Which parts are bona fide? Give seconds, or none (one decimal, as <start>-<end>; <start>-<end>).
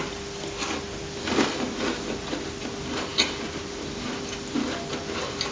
0.0-5.5